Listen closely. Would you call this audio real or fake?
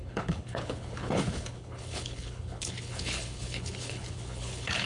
fake